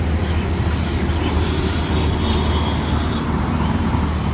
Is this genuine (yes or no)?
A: yes